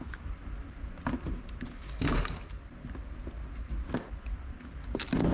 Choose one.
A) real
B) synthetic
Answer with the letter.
A